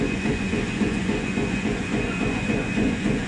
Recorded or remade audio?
remade